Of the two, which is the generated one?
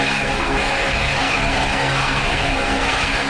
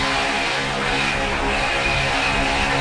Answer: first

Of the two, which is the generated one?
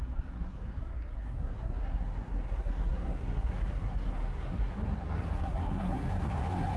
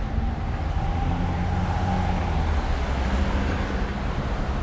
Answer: first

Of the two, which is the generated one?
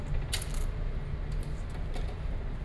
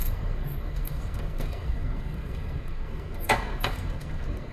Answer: second